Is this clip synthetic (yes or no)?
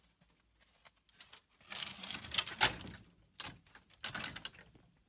no